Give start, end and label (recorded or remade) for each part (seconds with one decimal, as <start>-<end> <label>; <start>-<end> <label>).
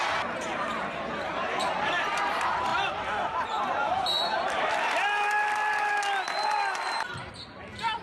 0.0-8.0 recorded